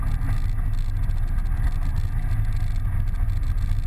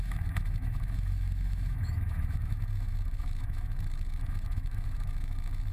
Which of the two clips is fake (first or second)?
second